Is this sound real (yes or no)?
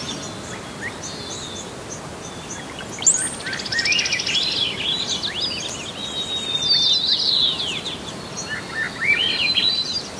yes